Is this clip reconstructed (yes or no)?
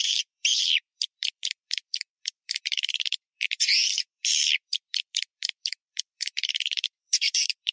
yes